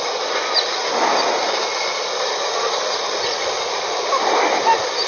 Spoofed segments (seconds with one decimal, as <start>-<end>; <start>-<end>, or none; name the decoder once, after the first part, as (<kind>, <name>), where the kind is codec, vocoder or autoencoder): none